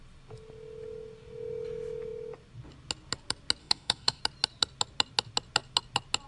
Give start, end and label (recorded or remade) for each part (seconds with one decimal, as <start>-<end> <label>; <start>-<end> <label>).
0.0-3.6 recorded; 3.6-4.2 remade; 4.2-6.3 recorded